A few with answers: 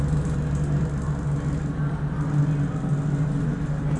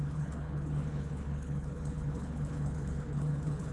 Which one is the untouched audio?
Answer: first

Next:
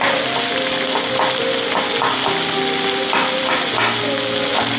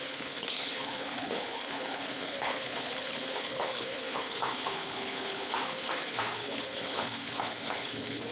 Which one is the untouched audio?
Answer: first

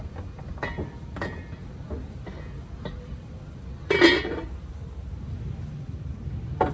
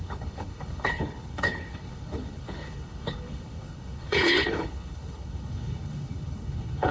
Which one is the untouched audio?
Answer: first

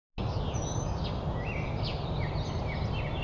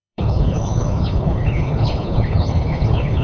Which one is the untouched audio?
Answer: first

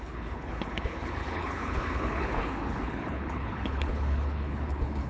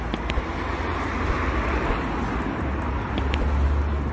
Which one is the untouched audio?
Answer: second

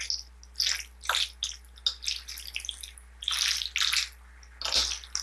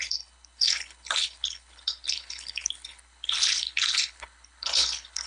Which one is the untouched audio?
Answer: first